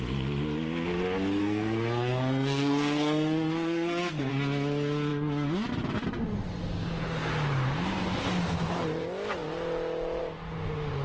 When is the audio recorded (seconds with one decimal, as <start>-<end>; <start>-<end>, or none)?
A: 0.0-1.4; 4.3-11.0